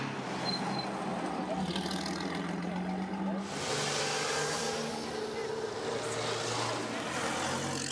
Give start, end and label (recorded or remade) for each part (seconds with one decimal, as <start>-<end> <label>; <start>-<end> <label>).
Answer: 0.0-7.9 recorded